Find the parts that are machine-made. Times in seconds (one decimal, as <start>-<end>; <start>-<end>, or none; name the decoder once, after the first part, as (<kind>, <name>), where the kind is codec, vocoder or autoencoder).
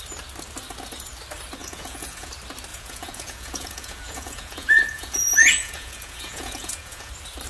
1.6-2.3 (vocoder, Vocos); 2.7-7.1